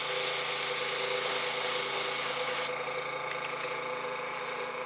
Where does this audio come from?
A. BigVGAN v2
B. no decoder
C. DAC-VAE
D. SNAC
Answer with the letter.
B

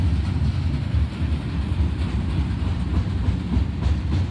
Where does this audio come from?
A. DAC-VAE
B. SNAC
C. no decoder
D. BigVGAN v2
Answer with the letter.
C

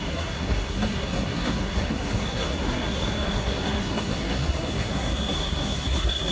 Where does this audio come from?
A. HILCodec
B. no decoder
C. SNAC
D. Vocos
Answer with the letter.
C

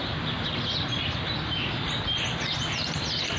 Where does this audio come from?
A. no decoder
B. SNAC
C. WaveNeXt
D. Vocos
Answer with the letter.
A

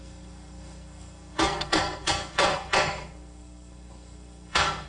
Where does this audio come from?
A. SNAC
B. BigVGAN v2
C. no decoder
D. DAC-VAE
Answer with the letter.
A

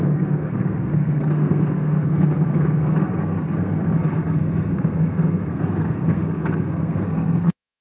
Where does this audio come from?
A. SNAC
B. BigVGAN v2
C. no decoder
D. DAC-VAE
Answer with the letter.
A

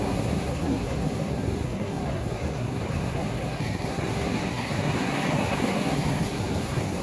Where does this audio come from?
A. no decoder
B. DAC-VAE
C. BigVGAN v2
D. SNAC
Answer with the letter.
D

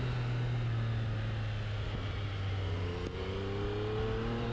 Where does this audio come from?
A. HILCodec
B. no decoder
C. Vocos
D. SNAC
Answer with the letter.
B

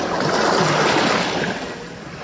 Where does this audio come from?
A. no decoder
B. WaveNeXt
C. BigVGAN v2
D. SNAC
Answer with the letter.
A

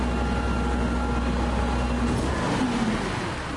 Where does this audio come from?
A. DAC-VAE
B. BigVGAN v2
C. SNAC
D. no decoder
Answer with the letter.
D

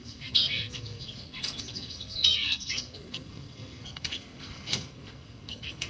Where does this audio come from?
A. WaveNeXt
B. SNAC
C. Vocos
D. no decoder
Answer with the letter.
B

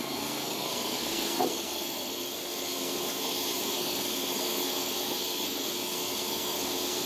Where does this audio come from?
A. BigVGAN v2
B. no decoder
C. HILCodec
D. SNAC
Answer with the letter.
D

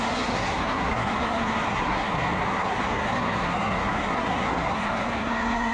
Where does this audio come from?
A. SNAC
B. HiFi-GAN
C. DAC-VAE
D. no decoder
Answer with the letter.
A